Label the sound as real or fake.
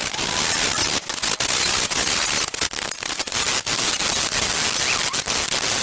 real